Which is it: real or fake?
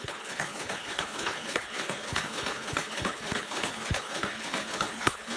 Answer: fake